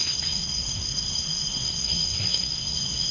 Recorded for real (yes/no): no